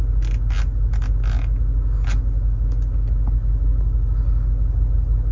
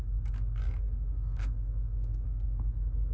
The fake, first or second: second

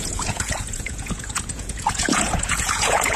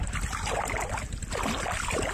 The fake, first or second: first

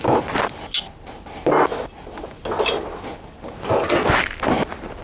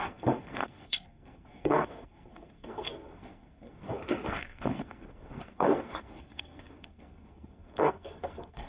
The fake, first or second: second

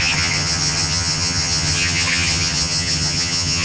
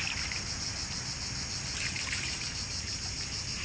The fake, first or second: first